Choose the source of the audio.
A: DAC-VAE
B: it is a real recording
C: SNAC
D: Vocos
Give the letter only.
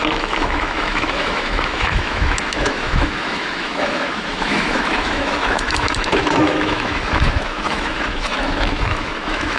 A